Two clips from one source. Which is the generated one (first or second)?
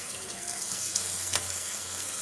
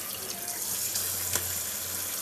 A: first